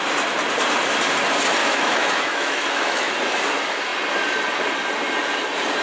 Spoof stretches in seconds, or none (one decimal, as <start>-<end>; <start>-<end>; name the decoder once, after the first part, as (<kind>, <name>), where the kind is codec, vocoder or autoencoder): 1.6-3.1 (autoencoder, DAC-VAE)